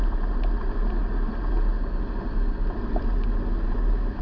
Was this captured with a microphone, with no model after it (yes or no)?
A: yes